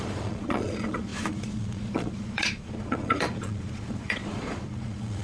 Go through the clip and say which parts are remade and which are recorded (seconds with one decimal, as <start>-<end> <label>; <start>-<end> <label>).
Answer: 0.0-5.2 remade